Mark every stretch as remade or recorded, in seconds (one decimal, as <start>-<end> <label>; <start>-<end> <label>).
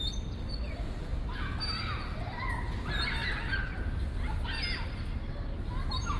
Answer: 0.0-6.2 recorded